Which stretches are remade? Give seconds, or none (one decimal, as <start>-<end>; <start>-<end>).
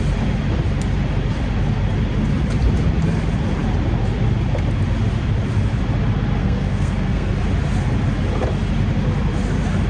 6.4-7.3